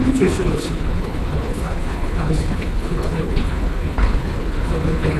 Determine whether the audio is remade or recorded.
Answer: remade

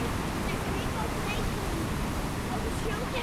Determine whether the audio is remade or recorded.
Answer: recorded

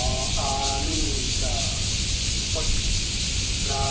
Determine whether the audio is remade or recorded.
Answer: remade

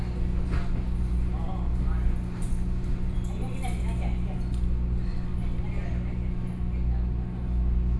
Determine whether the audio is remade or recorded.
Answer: recorded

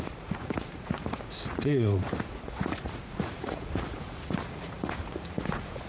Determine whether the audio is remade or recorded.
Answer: remade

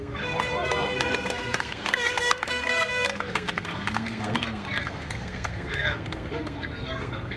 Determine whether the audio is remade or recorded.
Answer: remade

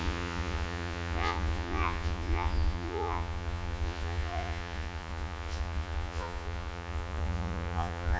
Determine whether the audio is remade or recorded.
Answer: remade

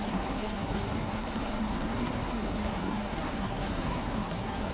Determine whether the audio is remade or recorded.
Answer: remade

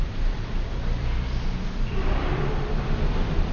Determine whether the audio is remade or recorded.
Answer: remade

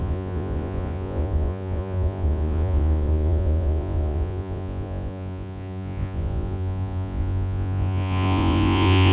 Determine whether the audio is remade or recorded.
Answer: remade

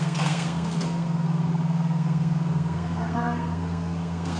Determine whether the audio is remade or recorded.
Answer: remade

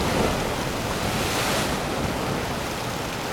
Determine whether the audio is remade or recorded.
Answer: recorded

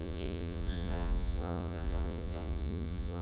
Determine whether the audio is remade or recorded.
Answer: remade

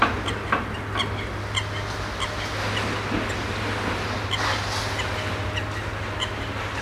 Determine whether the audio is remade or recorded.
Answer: recorded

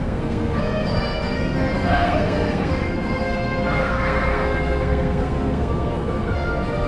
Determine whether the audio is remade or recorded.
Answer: remade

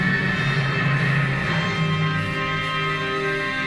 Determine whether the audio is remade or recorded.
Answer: recorded